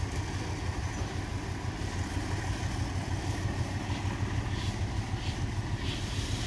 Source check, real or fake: real